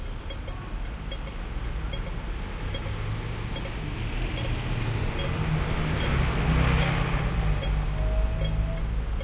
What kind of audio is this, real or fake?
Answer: real